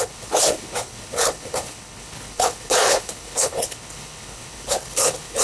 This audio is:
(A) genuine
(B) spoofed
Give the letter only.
B